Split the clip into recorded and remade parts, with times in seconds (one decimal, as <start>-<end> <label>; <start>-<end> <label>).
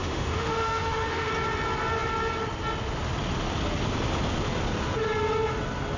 0.0-1.3 remade; 1.3-6.0 recorded